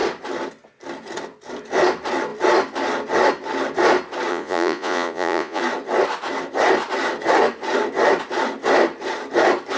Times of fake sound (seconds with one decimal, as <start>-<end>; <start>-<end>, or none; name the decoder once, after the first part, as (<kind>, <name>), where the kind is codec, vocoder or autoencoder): 4.3-5.6 (vocoder, Vocos)